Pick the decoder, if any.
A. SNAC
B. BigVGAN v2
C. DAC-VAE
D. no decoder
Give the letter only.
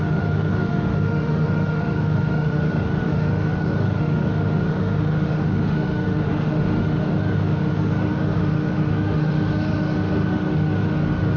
C